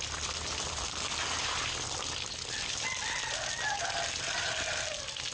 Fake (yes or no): no